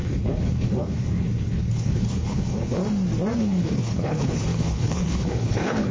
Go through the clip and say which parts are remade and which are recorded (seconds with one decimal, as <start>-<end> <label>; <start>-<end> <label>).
0.0-2.8 remade; 2.8-3.4 recorded; 3.4-5.9 remade